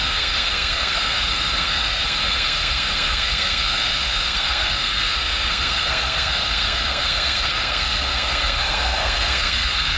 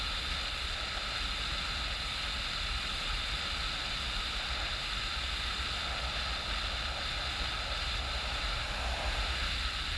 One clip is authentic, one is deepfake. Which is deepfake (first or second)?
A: first